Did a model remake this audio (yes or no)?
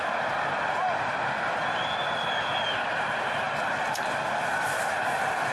no